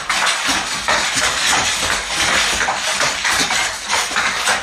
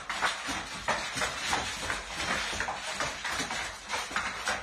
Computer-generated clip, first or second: first